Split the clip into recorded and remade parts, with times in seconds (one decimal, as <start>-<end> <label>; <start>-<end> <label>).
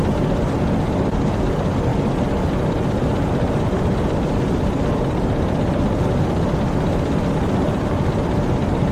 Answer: 0.0-8.9 recorded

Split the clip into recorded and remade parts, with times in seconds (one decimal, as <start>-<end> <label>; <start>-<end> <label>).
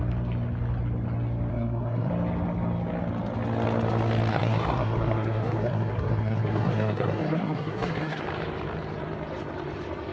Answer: 0.0-1.5 recorded; 1.5-2.1 remade; 2.1-4.3 recorded; 4.3-8.2 remade; 8.2-10.1 recorded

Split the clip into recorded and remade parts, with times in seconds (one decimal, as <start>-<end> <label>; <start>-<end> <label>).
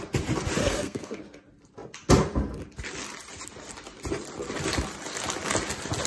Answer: 0.0-0.6 recorded; 0.6-1.2 remade; 1.2-6.1 recorded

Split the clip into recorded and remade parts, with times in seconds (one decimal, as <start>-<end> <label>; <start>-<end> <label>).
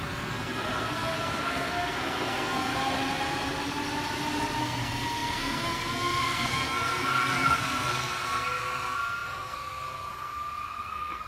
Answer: 0.0-2.7 remade; 2.7-4.6 recorded; 4.6-11.3 remade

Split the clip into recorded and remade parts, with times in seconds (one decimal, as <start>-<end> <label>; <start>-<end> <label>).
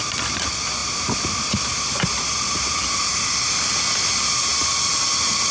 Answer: 0.0-5.5 recorded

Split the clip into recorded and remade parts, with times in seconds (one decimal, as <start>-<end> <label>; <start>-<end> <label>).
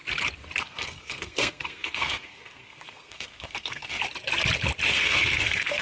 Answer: 0.0-0.6 recorded; 0.6-4.0 remade; 4.0-4.9 recorded; 4.9-5.8 remade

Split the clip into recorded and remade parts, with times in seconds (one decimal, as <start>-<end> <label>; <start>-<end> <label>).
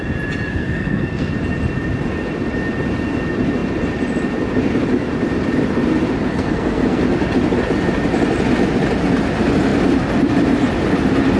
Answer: 0.0-0.5 recorded; 0.5-1.3 remade; 1.3-6.3 recorded; 6.3-7.0 remade; 7.0-11.4 recorded